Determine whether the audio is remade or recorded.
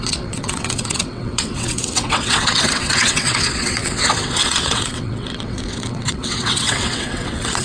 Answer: remade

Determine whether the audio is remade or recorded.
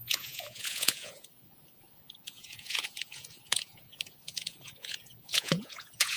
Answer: remade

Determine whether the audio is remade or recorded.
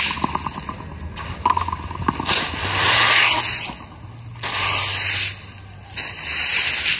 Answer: recorded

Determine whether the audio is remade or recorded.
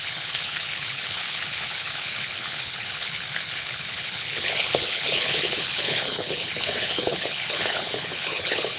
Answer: remade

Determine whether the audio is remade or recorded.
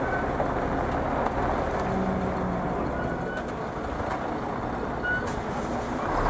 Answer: recorded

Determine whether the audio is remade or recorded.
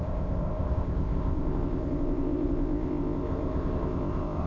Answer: remade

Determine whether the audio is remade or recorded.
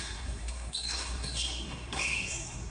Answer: remade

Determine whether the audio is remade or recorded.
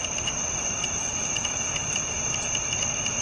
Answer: remade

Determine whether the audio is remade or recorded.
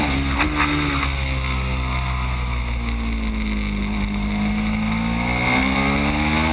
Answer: recorded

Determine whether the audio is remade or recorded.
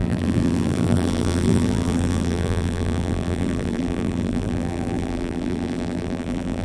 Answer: remade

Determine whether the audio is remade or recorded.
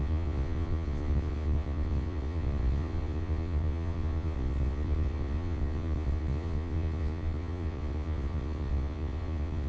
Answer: remade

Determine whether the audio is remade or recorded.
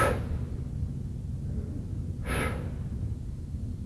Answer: recorded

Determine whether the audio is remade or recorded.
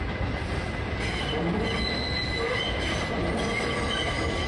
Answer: recorded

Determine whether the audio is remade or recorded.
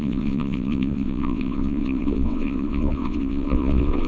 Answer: remade